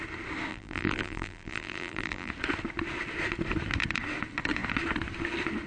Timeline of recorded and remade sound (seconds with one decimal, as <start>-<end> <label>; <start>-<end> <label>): 0.0-0.5 recorded; 0.5-2.3 remade; 2.3-5.7 recorded

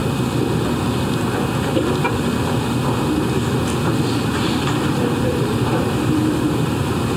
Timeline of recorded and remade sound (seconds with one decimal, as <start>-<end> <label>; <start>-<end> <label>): 0.0-4.3 recorded; 4.3-7.2 remade

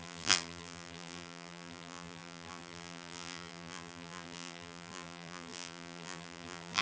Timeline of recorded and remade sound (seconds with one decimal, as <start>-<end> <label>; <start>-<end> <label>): 0.0-6.8 remade

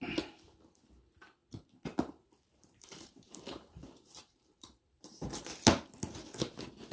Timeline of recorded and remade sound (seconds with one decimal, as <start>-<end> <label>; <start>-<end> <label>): 0.0-1.4 recorded; 1.4-5.5 remade; 5.5-6.9 recorded

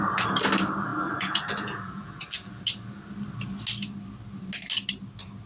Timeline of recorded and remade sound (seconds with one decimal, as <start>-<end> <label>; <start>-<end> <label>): 0.0-0.9 recorded; 0.9-2.6 remade; 2.6-5.5 recorded

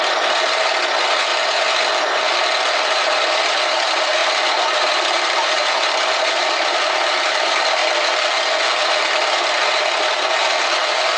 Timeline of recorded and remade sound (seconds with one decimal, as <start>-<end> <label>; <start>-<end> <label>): 0.0-1.3 remade; 1.3-2.7 recorded; 2.7-7.8 remade; 7.8-8.9 recorded; 8.9-11.2 remade

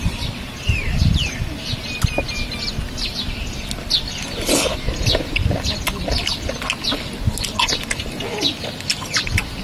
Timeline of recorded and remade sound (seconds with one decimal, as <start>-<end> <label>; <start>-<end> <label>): 0.0-8.9 recorded; 8.9-9.6 remade